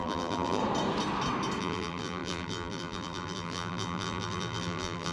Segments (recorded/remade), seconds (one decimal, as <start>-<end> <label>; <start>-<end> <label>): 0.0-0.6 remade; 0.6-1.6 recorded; 1.6-5.1 remade